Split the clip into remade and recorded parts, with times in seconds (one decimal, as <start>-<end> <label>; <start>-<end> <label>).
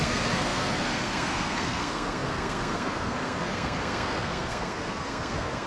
0.0-5.7 remade